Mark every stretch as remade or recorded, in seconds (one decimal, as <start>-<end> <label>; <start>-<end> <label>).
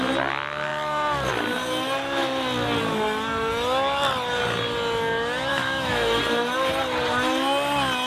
0.0-5.5 recorded; 5.5-6.2 remade; 6.2-8.1 recorded